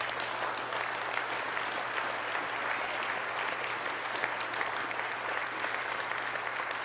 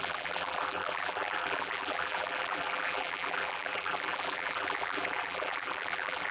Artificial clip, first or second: second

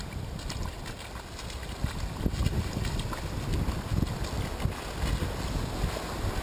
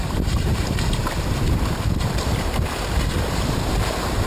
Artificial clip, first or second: second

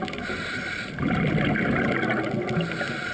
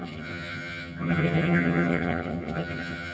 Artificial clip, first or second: second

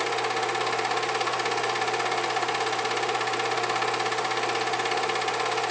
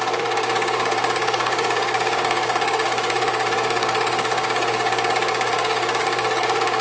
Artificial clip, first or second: second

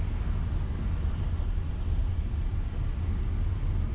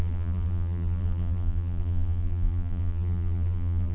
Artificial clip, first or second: second